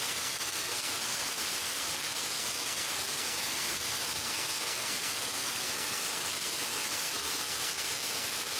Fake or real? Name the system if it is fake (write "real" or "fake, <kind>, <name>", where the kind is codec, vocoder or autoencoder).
fake, codec, SNAC